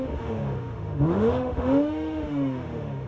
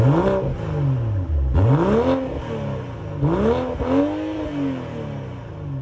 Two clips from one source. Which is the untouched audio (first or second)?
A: second